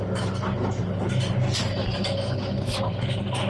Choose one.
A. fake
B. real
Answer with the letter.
B